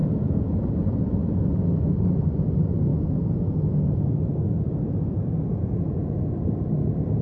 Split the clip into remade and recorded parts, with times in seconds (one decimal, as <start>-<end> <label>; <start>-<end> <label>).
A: 0.0-0.7 remade; 0.7-2.9 recorded; 2.9-6.2 remade; 6.2-7.2 recorded